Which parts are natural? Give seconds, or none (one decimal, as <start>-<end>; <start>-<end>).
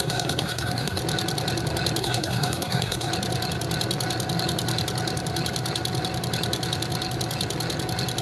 1.0-2.0; 3.1-8.2